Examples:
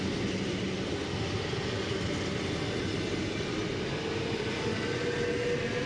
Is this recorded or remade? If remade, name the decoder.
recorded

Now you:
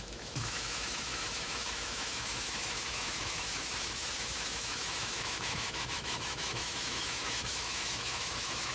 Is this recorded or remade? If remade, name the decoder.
remade, autoencoder, DAC-VAE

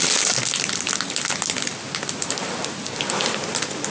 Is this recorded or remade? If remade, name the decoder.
recorded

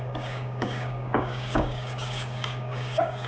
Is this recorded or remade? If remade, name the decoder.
remade, codec, DAC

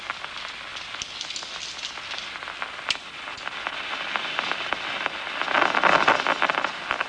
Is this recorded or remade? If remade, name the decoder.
recorded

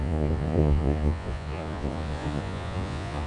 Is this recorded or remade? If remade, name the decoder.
remade, vocoder, Vocos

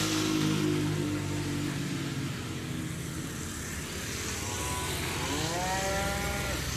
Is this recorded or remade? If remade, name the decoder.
recorded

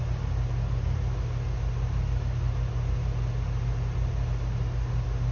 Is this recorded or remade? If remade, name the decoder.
recorded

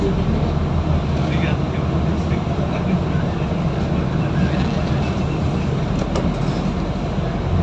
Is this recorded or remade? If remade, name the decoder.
recorded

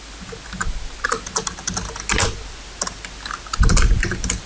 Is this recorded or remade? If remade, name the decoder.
recorded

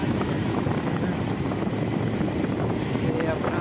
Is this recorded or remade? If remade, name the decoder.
recorded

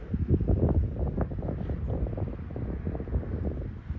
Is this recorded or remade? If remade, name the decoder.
recorded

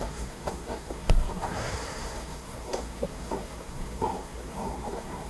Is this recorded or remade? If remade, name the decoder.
remade, codec, SNAC